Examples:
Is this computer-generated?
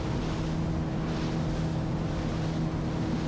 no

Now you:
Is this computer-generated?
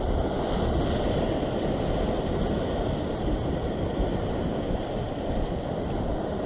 no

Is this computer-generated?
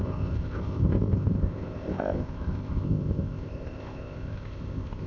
yes